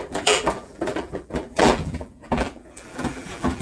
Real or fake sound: fake